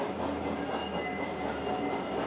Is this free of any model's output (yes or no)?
yes